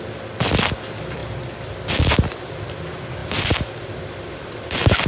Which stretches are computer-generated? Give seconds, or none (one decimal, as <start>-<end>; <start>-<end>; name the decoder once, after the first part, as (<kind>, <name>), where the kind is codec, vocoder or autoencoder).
none